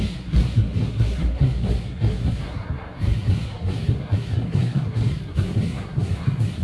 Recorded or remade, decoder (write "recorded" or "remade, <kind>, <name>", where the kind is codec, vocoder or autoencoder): remade, codec, SNAC